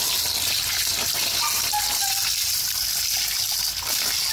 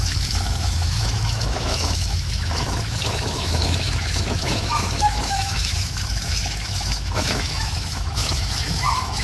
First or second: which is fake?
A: second